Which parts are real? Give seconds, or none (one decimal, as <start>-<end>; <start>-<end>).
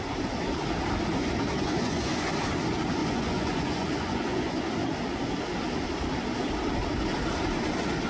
0.0-1.6; 2.3-3.0; 4.6-8.1